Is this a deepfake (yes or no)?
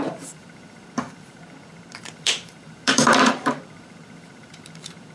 yes